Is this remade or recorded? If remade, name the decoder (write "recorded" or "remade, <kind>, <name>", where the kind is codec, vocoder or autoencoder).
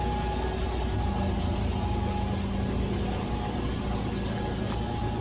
recorded